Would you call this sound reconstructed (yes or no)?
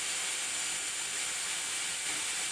no